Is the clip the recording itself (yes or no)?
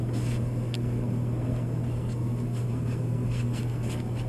no